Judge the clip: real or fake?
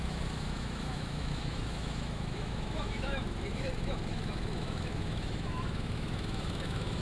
fake